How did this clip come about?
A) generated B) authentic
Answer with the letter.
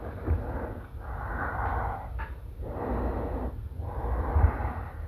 B